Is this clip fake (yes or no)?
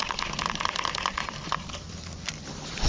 no